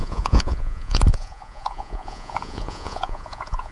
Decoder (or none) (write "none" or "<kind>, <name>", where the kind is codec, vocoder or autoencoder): vocoder, Vocos